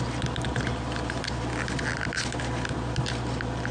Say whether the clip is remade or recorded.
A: recorded